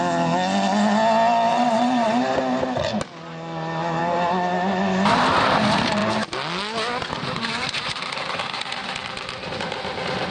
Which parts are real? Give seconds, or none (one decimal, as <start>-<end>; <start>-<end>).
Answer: 0.0-1.5; 2.2-10.3